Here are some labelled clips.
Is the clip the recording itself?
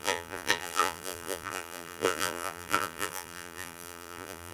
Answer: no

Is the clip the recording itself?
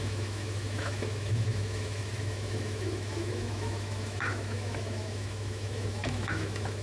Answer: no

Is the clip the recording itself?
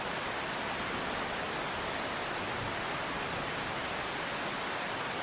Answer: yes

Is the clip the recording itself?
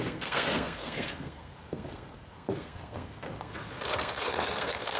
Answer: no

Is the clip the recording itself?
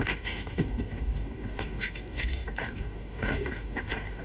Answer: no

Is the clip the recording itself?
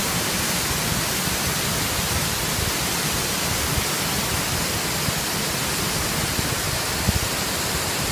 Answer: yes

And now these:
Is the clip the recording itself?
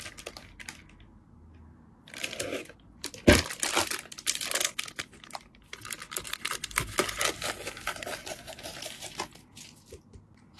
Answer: yes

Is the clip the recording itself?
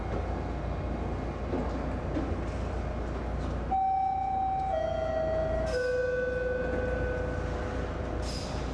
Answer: yes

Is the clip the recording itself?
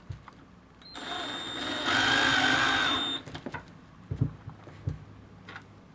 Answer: yes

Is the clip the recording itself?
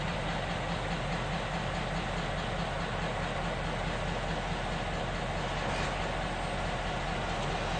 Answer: yes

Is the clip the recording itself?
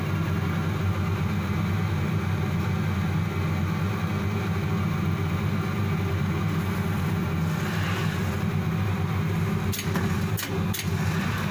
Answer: yes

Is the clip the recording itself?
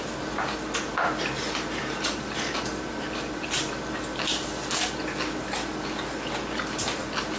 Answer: yes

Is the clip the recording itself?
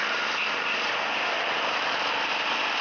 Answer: yes